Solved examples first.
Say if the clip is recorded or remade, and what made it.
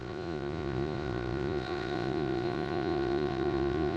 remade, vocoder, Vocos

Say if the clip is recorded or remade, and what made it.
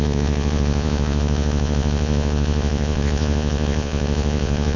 remade, vocoder, Vocos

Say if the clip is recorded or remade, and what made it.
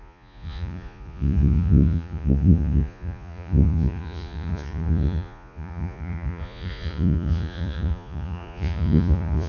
remade, vocoder, Vocos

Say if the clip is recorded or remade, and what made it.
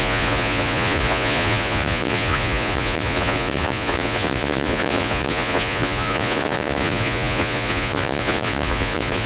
remade, vocoder, Vocos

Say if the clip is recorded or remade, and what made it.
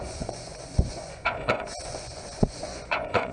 remade, vocoder, Vocos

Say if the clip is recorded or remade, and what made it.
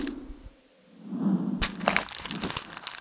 recorded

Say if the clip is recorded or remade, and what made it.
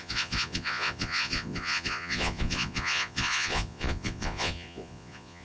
remade, vocoder, Vocos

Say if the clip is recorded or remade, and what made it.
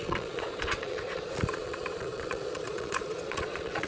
remade, vocoder, Vocos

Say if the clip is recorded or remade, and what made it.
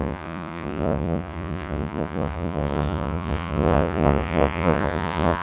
remade, vocoder, Vocos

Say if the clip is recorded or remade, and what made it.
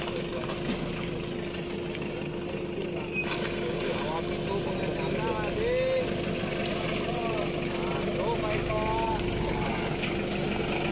recorded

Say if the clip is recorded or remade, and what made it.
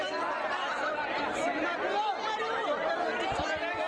recorded